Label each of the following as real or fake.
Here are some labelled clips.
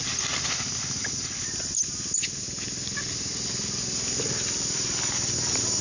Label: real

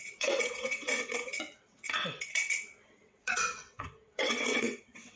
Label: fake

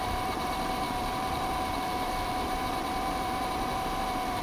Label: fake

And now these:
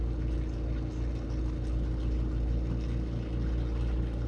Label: real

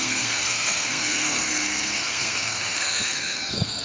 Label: fake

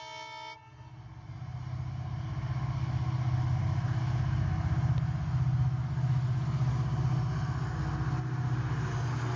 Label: real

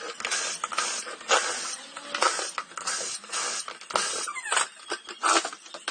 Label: real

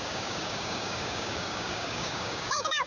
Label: fake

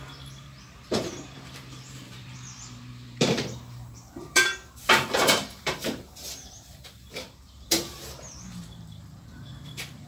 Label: fake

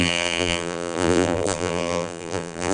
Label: fake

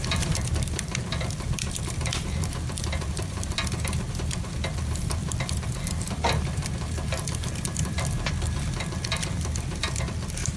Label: fake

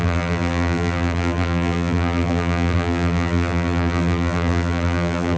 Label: fake